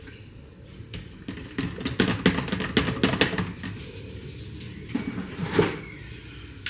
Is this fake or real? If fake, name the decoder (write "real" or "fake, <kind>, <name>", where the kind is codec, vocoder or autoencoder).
real